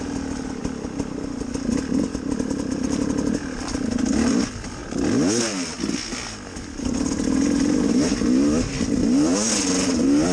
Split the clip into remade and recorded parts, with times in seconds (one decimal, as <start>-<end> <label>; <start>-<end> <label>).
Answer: 0.0-9.0 recorded; 9.0-9.5 remade; 9.5-10.3 recorded